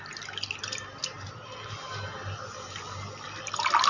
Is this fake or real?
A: real